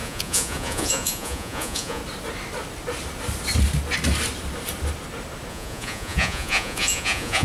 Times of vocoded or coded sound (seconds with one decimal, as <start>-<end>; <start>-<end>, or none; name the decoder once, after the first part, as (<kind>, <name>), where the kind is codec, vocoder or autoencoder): 0.0-2.0 (vocoder, Vocos); 5.5-7.4